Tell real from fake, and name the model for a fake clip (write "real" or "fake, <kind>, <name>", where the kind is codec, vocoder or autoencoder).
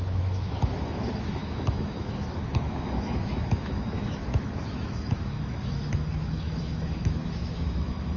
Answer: fake, autoencoder, DAC-VAE